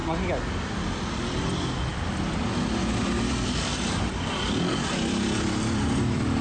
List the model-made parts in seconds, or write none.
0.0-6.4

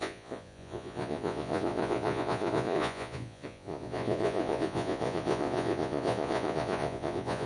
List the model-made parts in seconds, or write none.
0.0-7.5